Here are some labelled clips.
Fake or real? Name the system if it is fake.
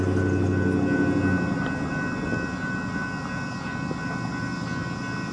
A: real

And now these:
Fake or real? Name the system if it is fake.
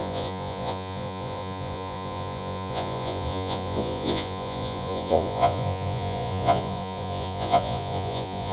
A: fake, vocoder, Vocos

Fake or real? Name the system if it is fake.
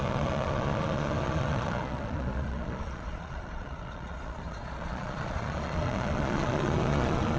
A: fake, vocoder, Vocos